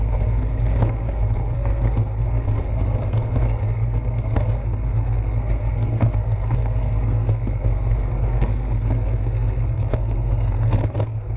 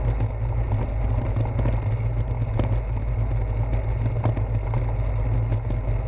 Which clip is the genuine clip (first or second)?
second